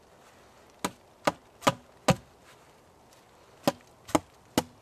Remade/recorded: recorded